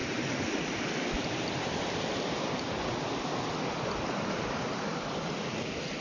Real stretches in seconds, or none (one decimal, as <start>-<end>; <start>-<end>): 0.0-6.0